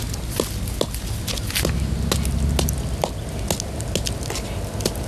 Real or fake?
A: real